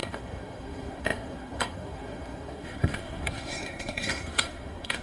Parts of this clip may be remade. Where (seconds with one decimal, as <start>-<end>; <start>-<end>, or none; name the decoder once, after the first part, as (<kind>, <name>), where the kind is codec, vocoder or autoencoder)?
0.0-5.0 (codec, SNAC)